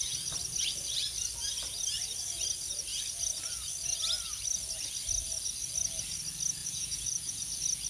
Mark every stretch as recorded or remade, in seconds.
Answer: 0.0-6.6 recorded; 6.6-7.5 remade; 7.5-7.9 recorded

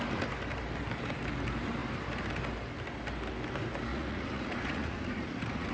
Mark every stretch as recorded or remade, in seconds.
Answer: 0.0-3.9 recorded; 3.9-5.7 remade

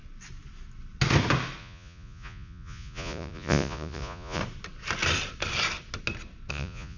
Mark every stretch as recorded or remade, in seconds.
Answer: 0.0-1.6 recorded; 1.6-4.4 remade; 4.4-6.5 recorded; 6.5-7.0 remade